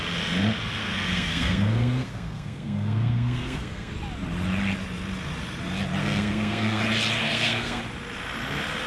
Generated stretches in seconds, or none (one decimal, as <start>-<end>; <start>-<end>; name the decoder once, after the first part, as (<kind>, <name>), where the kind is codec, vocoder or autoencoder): 0.8-3.9 (codec, SNAC); 6.0-6.8; 7.2-7.8